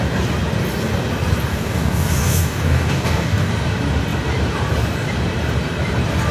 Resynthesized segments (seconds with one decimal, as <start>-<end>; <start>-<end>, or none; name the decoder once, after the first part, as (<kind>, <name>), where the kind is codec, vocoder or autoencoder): 1.5-3.5 (codec, DAC)